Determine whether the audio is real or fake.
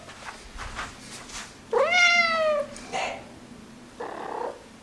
real